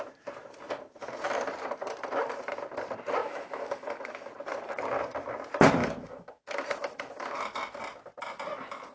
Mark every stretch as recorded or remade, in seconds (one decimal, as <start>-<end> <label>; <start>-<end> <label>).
0.0-3.2 recorded; 3.2-4.3 remade; 4.3-5.8 recorded; 5.8-7.4 remade; 7.4-8.9 recorded